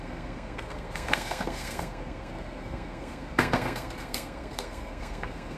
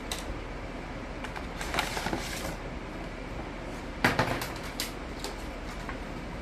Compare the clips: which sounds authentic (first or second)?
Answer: second